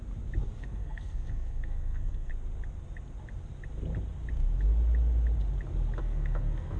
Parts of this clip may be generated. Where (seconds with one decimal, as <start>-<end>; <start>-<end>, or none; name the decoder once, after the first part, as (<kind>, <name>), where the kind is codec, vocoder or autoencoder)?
0.6-2.3 (codec, SNAC); 6.0-6.8